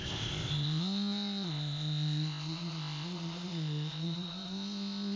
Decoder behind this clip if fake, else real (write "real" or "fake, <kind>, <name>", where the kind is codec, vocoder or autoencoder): fake, codec, ZipCodec